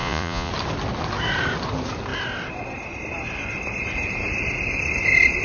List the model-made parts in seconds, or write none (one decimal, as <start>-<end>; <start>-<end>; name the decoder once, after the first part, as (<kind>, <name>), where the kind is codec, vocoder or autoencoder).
0.0-0.5 (vocoder, Vocos)